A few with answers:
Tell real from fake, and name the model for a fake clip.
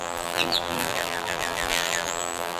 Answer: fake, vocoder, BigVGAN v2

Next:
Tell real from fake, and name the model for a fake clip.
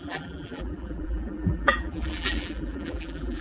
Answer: fake, vocoder, BigVGAN v2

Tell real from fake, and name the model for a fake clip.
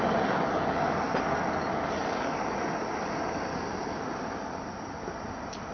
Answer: real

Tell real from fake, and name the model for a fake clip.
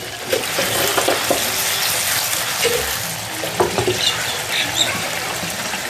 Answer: real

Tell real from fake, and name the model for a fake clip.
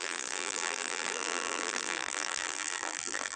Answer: fake, vocoder, BigVGAN v2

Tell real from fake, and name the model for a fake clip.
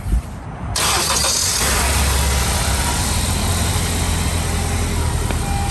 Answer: real